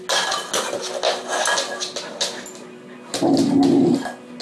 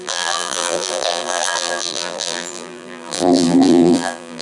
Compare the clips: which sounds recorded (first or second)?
first